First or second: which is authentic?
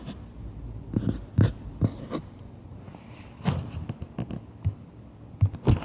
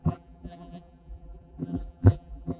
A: first